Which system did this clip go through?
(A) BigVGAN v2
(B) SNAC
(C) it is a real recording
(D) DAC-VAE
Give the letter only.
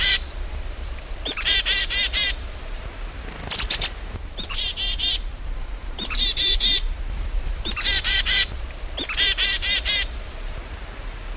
A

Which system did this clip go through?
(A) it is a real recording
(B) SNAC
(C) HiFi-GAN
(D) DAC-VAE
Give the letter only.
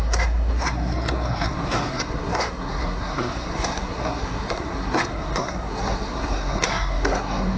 B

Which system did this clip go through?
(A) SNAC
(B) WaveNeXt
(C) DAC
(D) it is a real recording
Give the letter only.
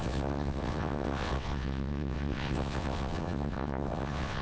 B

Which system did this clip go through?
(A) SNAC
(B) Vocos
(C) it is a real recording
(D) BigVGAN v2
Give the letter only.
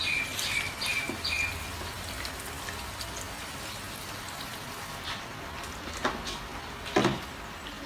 C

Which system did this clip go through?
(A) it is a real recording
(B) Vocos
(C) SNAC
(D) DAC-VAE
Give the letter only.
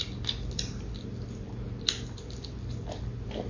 A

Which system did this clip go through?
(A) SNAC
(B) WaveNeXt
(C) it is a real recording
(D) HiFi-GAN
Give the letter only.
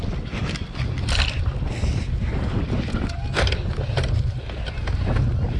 C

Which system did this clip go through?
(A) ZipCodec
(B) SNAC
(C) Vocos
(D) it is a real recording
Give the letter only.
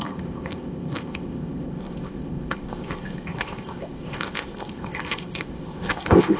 A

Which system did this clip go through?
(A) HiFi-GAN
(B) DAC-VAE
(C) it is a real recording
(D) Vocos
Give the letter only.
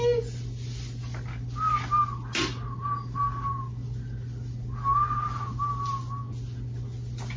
C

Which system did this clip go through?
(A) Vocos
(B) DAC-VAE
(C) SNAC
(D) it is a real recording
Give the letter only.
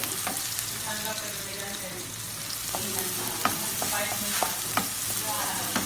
D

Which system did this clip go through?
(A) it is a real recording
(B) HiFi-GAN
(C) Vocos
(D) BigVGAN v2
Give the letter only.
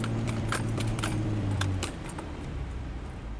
D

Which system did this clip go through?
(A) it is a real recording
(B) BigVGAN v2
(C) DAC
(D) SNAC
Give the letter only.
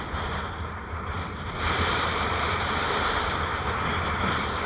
B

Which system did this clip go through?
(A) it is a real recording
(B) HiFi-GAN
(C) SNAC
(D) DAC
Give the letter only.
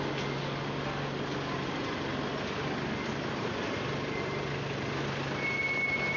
A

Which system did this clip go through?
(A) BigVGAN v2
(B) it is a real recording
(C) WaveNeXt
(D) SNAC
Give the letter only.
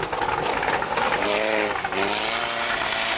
B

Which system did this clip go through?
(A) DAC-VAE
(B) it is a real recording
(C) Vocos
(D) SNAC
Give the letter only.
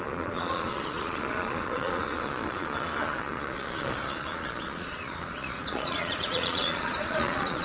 C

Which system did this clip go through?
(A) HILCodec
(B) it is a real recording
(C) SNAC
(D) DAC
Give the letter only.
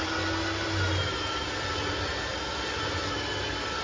B